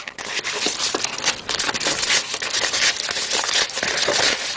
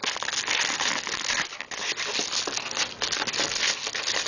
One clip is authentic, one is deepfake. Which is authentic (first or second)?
second